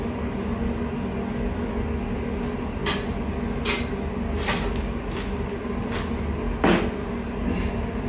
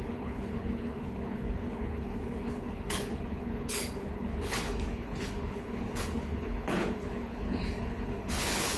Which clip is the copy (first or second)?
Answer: second